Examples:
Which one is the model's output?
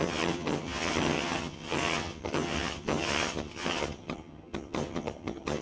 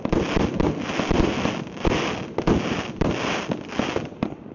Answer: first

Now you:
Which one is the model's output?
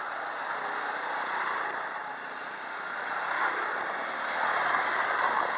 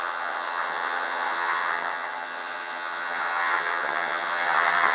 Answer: second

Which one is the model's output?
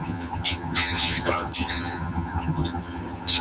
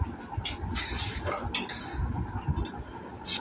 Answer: first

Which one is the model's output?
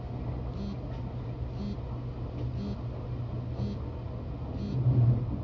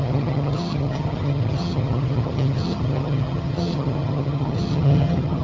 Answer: second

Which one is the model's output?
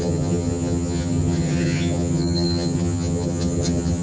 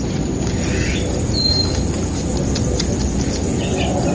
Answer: first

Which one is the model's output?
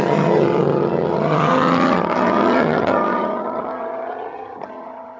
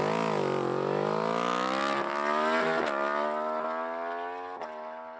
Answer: first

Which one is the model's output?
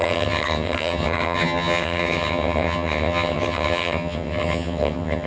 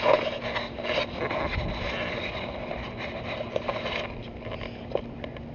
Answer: first